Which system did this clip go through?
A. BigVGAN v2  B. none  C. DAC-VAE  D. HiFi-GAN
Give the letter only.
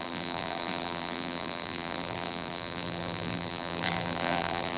A